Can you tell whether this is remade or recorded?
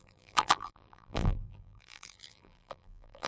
remade